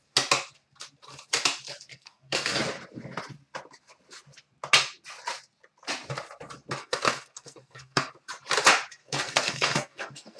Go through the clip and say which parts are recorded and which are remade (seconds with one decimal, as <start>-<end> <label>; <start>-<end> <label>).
0.0-1.9 recorded; 1.9-2.6 remade; 2.6-6.8 recorded; 6.8-8.1 remade; 8.1-9.0 recorded; 9.0-10.4 remade